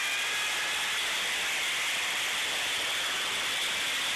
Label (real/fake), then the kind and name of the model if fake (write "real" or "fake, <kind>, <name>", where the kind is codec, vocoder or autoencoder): real